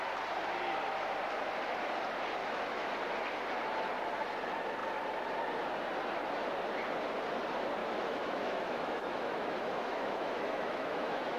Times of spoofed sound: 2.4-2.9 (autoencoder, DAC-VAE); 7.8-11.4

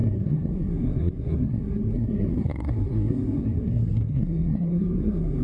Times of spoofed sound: 0.0-5.4 (codec, SNAC)

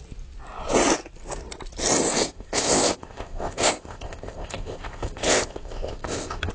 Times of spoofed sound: 2.3-6.5 (codec, ZipCodec)

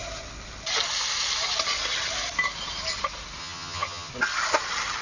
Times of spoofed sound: 3.4-4.1 (vocoder, HiFi-GAN)

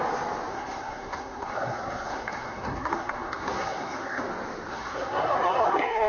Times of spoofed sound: 0.5-4.2 (codec, SNAC); 4.7-6.1

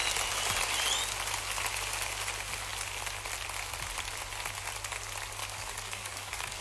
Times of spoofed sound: 5.4-6.6 (codec, DAC)